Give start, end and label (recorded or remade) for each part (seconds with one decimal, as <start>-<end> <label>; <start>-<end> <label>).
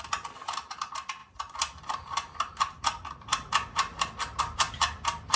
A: 0.0-5.4 recorded